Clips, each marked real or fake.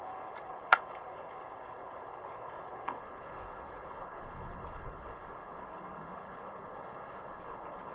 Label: fake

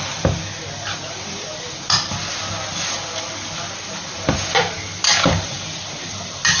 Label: real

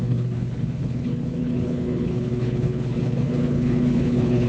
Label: fake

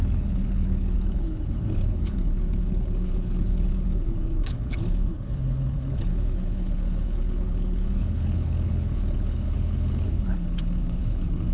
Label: fake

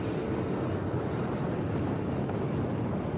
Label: real